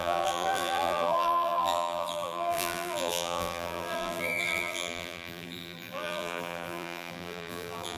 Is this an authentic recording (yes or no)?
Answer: no